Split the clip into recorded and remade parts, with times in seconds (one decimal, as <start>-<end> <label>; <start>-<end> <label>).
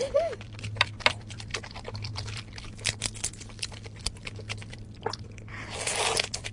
0.0-6.5 remade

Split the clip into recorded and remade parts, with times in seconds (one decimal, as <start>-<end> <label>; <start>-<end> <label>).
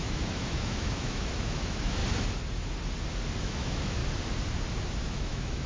0.0-2.0 remade; 2.0-3.4 recorded; 3.4-4.0 remade; 4.0-5.0 recorded; 5.0-5.7 remade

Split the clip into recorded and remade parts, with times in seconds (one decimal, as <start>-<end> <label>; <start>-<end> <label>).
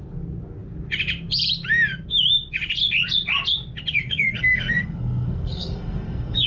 0.0-4.0 recorded; 4.0-6.5 remade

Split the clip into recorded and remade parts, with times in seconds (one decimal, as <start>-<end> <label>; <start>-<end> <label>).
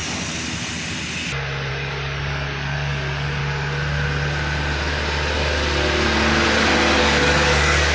0.0-1.7 recorded; 1.7-3.4 remade; 3.4-7.0 recorded; 7.0-7.9 remade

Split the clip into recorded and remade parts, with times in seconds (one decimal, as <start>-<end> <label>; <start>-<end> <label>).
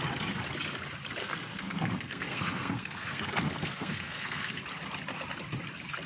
0.0-1.2 recorded; 1.2-4.6 remade; 4.6-6.1 recorded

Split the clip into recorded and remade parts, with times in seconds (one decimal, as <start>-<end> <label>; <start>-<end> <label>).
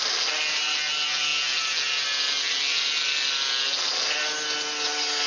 0.0-5.3 recorded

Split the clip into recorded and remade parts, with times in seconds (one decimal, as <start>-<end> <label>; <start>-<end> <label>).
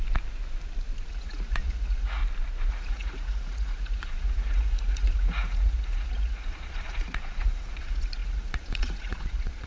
0.0-1.1 recorded; 1.1-2.2 remade; 2.2-2.7 recorded; 2.7-9.7 remade